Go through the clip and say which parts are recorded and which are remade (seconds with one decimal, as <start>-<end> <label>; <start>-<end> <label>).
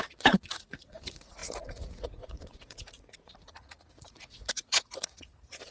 0.0-5.7 remade